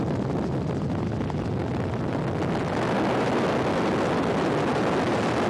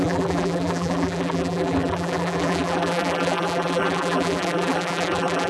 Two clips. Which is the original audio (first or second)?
first